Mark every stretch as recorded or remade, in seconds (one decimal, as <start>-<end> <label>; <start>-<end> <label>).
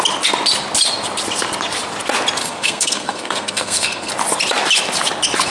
0.0-2.4 recorded; 2.4-4.1 remade; 4.1-5.5 recorded